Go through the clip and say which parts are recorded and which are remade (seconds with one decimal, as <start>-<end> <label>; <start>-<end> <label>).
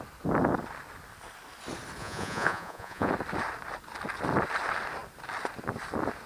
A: 0.0-2.0 recorded; 2.0-3.1 remade; 3.1-6.3 recorded